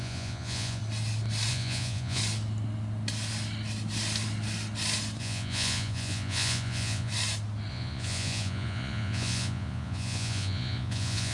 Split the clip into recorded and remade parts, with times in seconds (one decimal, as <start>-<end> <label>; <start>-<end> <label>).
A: 0.0-0.8 remade; 0.8-1.5 recorded; 1.5-2.2 remade; 2.2-5.2 recorded; 5.2-7.1 remade; 7.1-7.7 recorded; 7.7-11.3 remade